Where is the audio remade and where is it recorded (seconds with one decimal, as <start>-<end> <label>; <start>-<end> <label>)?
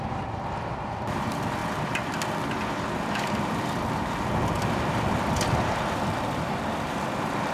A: 0.0-7.5 recorded